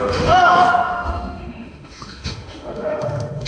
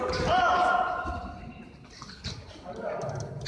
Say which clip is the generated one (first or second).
first